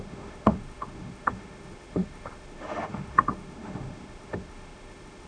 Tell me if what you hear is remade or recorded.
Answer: remade